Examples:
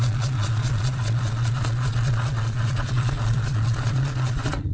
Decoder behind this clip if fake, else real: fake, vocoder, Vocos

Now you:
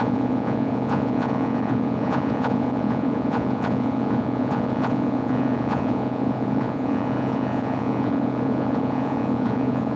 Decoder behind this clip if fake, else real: fake, vocoder, Vocos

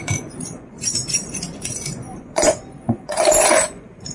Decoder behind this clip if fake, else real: fake, vocoder, Vocos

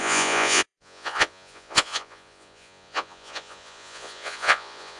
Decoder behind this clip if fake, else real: fake, vocoder, Vocos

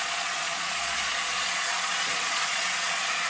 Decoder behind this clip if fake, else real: fake, vocoder, Vocos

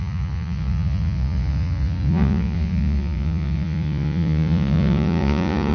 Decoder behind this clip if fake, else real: fake, vocoder, Vocos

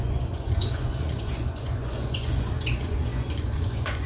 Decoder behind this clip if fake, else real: fake, vocoder, Vocos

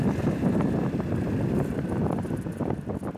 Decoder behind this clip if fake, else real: real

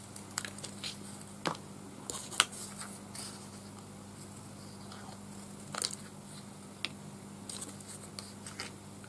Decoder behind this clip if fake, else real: real